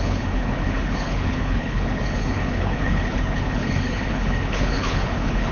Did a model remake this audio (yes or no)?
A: yes